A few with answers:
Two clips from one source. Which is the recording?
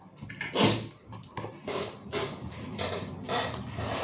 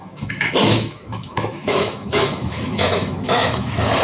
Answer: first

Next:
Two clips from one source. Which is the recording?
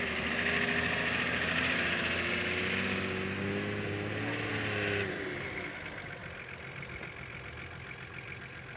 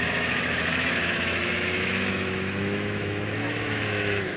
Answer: first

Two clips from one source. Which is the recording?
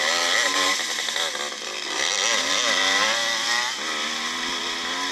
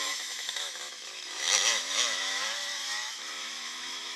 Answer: first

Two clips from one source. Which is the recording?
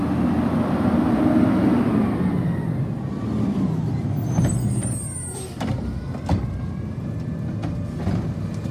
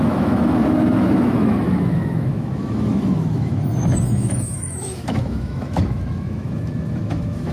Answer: first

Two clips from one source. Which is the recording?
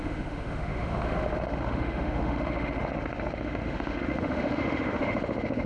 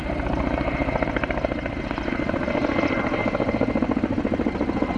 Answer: second